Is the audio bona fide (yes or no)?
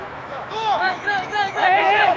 no